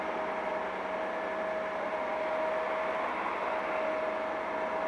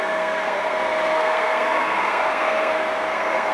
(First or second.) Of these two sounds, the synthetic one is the second